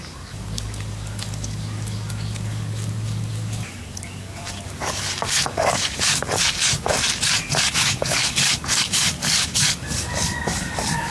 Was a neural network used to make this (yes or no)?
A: yes